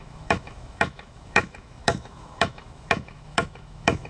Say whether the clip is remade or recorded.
remade